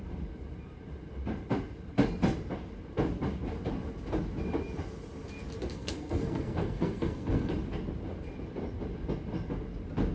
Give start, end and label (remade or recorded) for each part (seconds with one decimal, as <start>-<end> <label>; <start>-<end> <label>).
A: 0.0-5.7 recorded; 5.7-7.5 remade; 7.5-10.1 recorded